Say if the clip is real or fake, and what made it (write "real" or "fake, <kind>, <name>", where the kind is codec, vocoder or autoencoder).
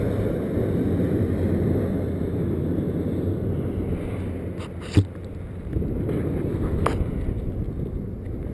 real